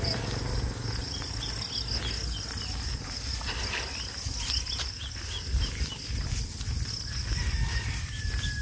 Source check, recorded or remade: recorded